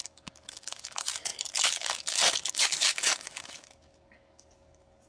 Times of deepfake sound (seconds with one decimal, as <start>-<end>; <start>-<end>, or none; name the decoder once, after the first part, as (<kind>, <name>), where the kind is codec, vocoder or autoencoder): 0.0-5.1 (codec, DAC)